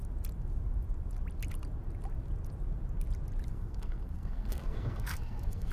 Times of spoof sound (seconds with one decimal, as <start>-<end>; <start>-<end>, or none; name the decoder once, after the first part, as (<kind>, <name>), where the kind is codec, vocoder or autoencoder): 3.5-5.7 (codec, SNAC)